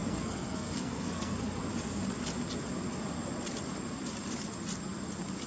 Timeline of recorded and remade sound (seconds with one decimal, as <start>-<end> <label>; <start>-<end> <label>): 0.0-1.6 remade; 1.6-5.5 recorded

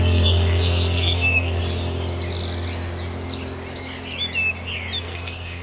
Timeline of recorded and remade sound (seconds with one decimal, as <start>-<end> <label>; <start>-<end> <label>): 0.0-1.6 remade; 1.6-5.0 recorded; 5.0-5.6 remade